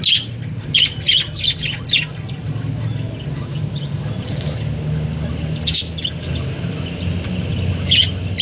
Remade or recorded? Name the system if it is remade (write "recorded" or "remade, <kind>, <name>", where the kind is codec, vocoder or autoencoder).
recorded